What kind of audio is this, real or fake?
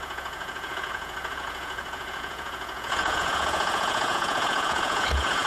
fake